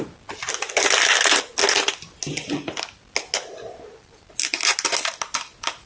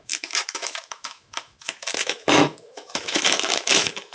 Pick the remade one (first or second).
second